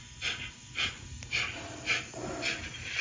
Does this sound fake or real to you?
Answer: real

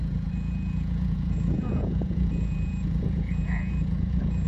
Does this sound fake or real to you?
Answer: fake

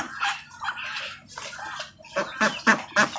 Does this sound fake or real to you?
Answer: real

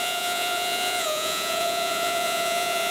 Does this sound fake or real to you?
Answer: fake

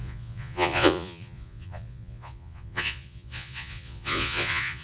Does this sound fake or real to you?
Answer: fake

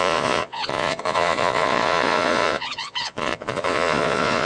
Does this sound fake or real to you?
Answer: fake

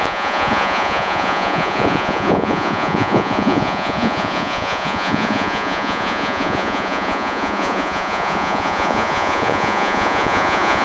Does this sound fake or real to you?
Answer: fake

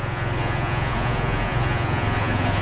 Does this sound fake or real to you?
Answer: fake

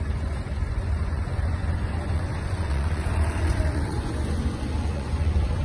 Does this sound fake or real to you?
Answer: fake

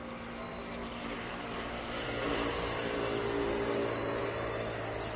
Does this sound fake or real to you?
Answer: real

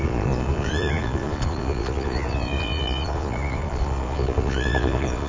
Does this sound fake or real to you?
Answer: fake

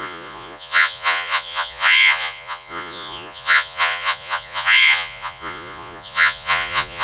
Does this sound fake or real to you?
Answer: fake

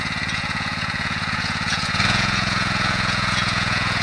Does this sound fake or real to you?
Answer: fake